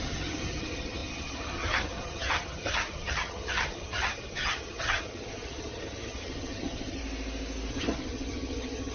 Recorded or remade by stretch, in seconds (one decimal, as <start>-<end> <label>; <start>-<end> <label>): 0.0-7.0 remade; 7.0-7.7 recorded; 7.7-8.9 remade